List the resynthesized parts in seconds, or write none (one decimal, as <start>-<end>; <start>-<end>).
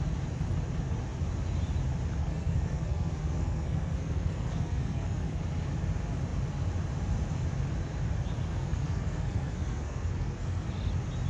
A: 2.2-5.4; 8.5-10.7